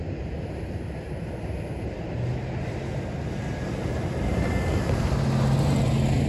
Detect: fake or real real